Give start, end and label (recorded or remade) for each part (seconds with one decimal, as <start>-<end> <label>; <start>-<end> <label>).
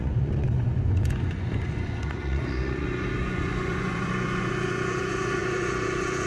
0.0-6.3 remade